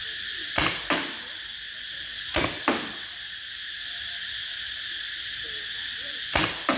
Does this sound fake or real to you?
real